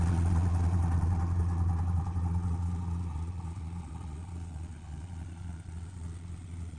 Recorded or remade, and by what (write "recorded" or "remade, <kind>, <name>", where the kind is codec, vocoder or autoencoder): remade, vocoder, Vocos